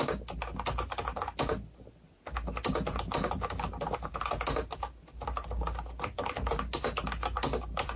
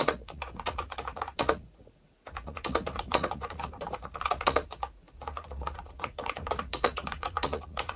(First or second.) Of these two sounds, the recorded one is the first